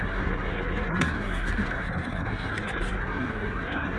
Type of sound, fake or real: fake